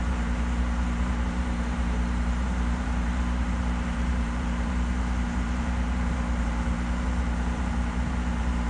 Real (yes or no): no